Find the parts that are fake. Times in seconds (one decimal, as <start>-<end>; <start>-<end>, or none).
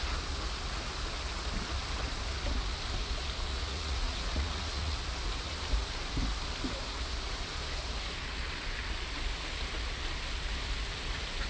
3.5-5.0